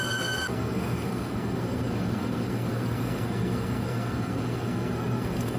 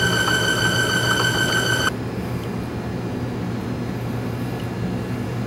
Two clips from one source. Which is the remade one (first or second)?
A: first